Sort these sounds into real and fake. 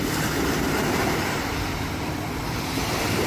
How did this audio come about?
fake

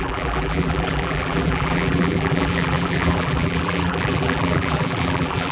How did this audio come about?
fake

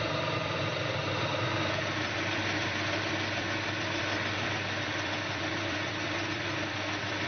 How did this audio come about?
fake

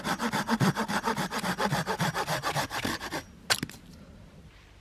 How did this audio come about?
real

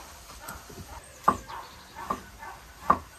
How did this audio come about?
real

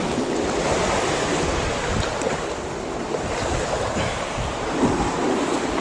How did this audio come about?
real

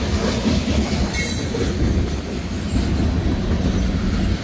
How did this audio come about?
real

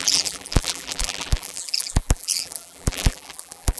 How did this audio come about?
fake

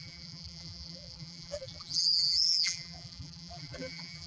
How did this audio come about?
fake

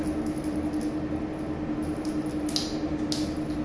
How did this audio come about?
real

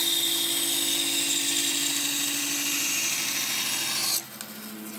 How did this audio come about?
real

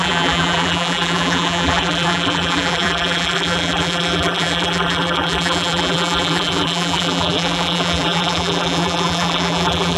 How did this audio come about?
fake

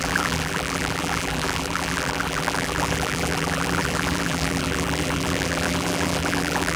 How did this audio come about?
fake